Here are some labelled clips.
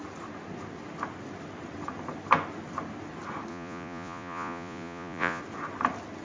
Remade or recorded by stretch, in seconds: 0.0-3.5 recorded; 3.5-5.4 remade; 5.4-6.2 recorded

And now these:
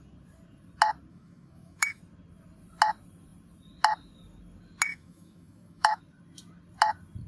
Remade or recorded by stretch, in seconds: 0.0-1.1 recorded; 1.1-2.0 remade; 2.0-4.9 recorded; 4.9-6.0 remade; 6.0-7.3 recorded

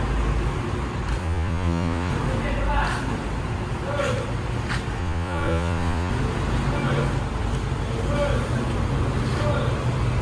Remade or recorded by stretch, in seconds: 0.0-1.2 recorded; 1.2-2.1 remade; 2.1-5.0 recorded; 5.0-6.1 remade; 6.1-10.2 recorded